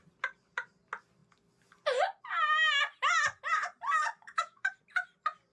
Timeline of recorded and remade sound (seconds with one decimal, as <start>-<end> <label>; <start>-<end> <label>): 0.0-4.0 recorded; 4.0-4.7 remade; 4.7-5.5 recorded